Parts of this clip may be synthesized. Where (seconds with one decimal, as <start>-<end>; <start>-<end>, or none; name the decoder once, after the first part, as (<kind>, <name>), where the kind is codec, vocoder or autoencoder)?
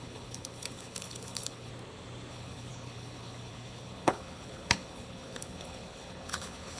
0.0-1.7 (codec, HILCodec); 2.3-6.8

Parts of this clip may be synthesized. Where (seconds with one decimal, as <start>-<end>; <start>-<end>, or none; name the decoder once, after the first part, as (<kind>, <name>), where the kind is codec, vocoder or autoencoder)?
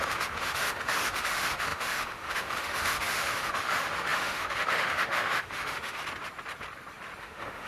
0.0-6.0 (autoencoder, DAC-VAE); 7.2-7.7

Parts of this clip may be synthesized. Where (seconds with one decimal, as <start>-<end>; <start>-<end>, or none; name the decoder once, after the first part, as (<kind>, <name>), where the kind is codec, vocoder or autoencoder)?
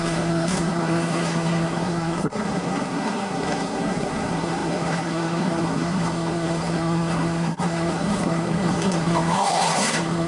0.0-10.3 (codec, SNAC)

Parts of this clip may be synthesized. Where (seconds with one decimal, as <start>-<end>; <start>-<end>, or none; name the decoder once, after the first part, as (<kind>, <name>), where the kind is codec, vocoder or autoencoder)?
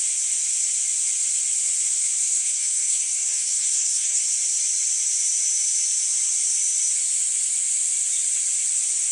2.2-4.2 (codec, SNAC)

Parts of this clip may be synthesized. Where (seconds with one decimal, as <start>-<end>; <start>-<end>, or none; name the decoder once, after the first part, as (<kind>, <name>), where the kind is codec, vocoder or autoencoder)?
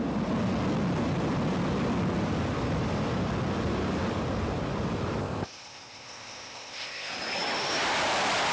5.2-7.1 (codec, ZipCodec)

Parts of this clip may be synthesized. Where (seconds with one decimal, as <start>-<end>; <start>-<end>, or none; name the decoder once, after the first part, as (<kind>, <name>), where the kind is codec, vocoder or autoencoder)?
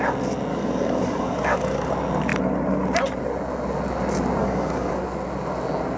0.5-1.9 (codec, DAC); 4.4-4.9